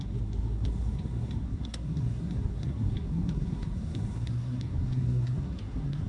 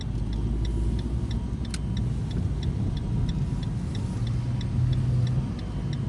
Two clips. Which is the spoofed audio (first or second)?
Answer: first